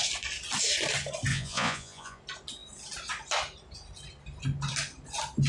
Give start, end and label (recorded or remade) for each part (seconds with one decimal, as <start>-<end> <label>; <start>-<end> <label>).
0.0-1.3 recorded; 1.3-2.2 remade; 2.2-5.5 recorded